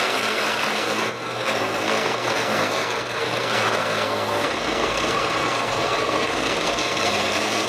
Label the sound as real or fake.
fake